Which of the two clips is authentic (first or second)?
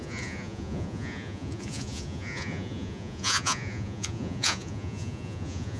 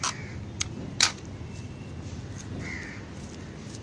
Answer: second